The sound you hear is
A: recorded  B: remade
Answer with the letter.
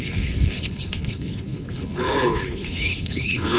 B